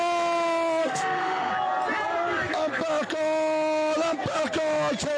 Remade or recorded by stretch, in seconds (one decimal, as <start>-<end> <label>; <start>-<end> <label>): 0.0-0.8 recorded; 0.8-1.5 remade; 1.5-5.2 recorded